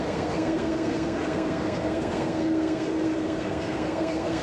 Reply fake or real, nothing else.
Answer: fake